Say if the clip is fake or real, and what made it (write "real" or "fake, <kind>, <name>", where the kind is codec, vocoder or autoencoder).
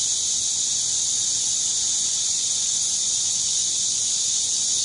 fake, vocoder, Vocos